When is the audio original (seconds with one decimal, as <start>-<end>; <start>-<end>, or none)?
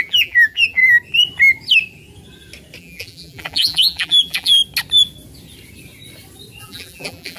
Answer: 0.8-2.8; 4.6-6.6